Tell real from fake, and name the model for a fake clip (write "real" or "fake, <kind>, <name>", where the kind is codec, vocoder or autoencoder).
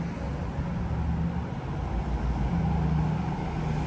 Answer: real